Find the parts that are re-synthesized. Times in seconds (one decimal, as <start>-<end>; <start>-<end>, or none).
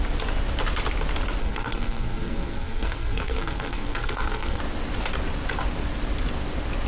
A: 1.4-4.6